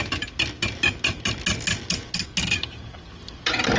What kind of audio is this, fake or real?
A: real